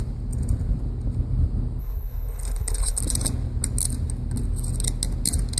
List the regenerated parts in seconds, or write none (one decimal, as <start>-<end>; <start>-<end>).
1.8-3.0